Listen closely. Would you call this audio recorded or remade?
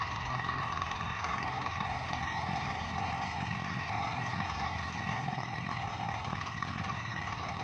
remade